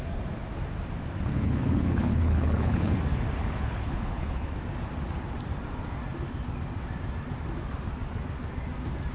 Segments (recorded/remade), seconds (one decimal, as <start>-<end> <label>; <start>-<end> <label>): 0.0-1.3 recorded; 1.3-2.9 remade; 2.9-3.4 recorded; 3.4-4.5 remade; 4.5-9.1 recorded